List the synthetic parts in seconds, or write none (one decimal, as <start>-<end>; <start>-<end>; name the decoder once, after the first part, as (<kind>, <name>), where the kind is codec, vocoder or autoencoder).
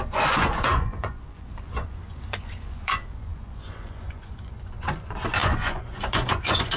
0.0-6.8 (vocoder, Vocos)